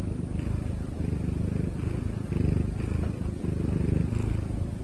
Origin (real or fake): real